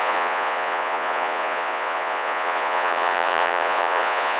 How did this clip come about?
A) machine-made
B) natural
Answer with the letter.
A